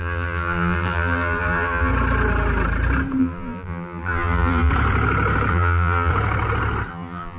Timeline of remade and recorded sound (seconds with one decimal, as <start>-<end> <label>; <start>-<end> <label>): 0.0-1.9 remade; 1.9-3.2 recorded; 3.2-4.7 remade; 4.7-5.5 recorded; 5.5-6.1 remade; 6.1-6.9 recorded; 6.9-7.4 remade